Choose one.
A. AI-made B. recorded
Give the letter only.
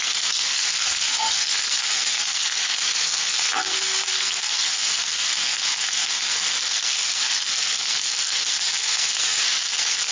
A